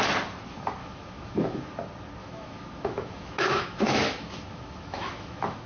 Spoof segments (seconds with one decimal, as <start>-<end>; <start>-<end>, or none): 0.8-1.7; 2.2-5.7

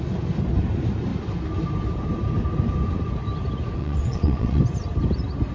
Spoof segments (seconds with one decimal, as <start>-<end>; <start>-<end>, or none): 3.8-4.6